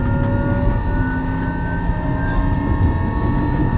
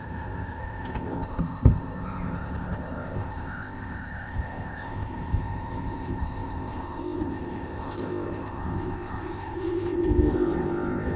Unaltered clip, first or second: first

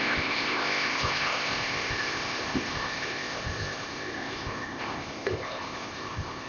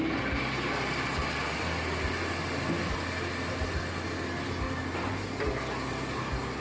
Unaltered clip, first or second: second